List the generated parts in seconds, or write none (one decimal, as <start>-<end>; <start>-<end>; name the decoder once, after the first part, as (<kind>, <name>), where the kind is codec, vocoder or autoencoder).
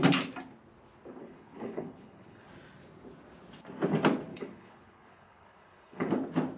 1.2-2.5 (codec, HILCodec); 4.3-6.1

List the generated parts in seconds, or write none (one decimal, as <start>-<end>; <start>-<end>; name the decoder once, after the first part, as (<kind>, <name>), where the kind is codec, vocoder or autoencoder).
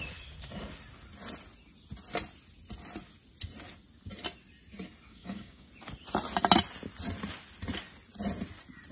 5.1-5.7 (codec, DAC)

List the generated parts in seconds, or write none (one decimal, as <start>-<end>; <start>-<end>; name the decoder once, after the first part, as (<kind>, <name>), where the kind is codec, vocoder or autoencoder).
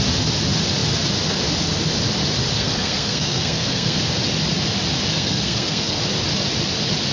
2.6-4.0 (codec, SNAC); 5.1-6.0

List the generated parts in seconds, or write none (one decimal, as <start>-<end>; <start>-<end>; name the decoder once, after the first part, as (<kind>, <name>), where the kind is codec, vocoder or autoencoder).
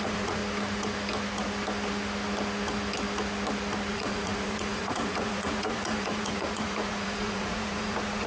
0.0-0.4 (vocoder, Vocos); 3.9-8.3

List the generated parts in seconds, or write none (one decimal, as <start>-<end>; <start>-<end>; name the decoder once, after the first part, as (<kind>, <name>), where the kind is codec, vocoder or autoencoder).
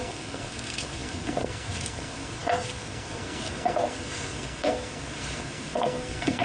0.0-6.4 (codec, SNAC)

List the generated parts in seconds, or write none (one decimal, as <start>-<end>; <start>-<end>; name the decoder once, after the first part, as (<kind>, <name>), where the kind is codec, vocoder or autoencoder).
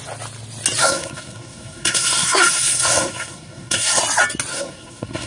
0.8-4.0 (codec, SNAC); 4.5-5.3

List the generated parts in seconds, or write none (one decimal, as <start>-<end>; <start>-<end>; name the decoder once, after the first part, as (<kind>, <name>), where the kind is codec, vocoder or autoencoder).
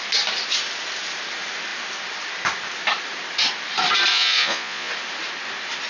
4.1-4.9 (vocoder, Vocos)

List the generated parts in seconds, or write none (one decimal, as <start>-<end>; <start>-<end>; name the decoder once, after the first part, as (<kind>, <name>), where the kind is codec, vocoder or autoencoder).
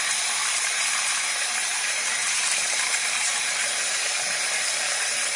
0.4-1.2 (vocoder, BigVGAN v2); 1.6-4.8